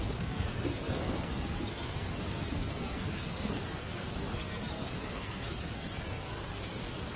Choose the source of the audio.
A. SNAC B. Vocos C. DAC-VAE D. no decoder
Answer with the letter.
A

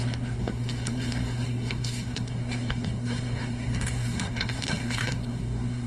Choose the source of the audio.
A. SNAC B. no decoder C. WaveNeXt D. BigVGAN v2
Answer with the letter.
A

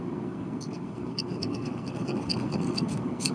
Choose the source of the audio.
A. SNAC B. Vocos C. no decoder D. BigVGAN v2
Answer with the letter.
A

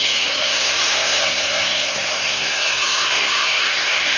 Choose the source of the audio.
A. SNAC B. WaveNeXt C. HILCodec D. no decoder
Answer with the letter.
A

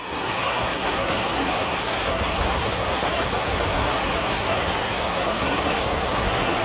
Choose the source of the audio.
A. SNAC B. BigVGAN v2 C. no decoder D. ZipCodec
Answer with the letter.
A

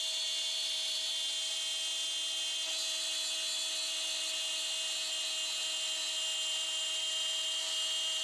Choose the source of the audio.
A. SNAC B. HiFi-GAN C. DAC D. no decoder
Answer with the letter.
D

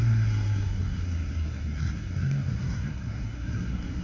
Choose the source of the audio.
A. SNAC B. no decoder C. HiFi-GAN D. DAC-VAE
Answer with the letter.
A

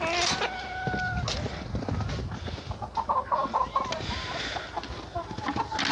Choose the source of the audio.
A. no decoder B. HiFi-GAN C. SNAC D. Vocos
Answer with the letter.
A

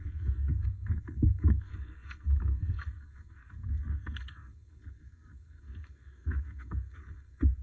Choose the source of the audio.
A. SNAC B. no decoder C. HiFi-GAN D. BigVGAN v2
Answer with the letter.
A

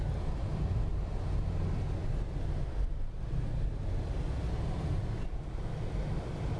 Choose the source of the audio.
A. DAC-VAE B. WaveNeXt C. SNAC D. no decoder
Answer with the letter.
D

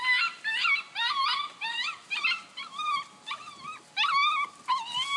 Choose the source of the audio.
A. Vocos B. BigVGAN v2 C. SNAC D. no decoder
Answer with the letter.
D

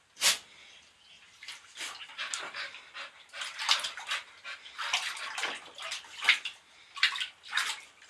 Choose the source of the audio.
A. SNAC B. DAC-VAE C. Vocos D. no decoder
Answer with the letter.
D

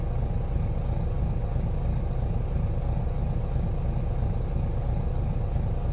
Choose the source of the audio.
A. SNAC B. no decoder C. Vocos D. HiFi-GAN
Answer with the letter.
B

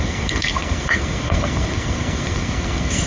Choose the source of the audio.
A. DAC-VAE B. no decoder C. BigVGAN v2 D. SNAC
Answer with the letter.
D